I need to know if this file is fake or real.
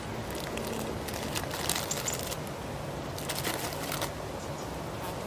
real